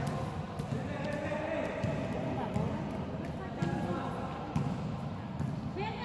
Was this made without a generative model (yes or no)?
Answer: yes